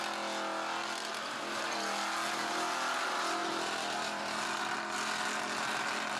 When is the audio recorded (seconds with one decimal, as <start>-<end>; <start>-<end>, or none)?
0.0-3.4; 4.3-6.2